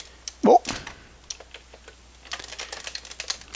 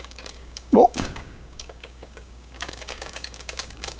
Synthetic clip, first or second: second